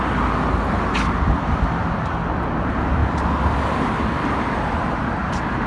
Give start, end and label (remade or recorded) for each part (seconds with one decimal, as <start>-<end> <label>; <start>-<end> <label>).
0.0-5.7 recorded